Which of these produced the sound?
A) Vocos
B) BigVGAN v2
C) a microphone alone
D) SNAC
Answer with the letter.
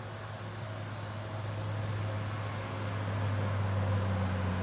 C